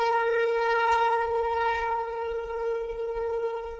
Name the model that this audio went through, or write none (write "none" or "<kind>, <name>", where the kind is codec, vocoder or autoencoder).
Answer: codec, HILCodec